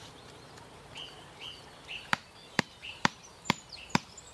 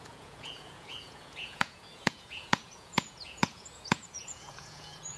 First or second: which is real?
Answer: first